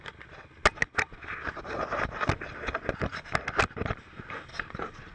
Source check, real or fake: real